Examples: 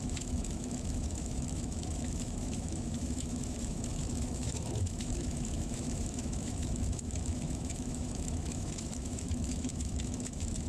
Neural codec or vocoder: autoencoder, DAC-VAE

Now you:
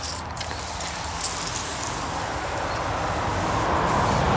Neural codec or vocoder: none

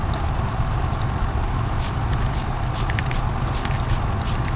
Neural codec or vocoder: none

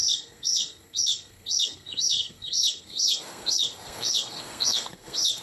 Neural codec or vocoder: codec, SNAC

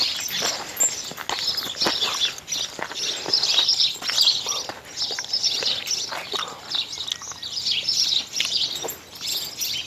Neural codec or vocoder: none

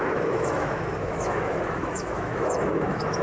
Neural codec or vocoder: autoencoder, DAC-VAE